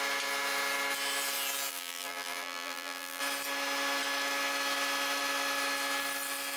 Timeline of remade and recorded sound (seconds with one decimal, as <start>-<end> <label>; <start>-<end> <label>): 0.0-1.7 recorded; 1.7-3.2 remade; 3.2-6.6 recorded